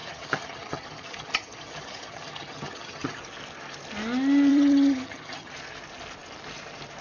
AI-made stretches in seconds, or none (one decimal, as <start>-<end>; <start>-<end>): 0.0-3.2; 4.5-5.5